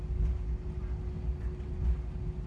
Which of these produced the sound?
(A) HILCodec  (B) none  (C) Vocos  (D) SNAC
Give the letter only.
B